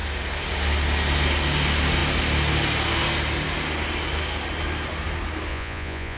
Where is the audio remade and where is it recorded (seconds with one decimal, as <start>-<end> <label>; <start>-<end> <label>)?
0.0-5.5 recorded; 5.5-6.2 remade